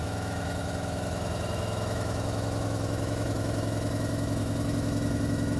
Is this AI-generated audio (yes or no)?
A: yes